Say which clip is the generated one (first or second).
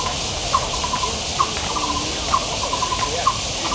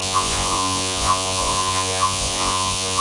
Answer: second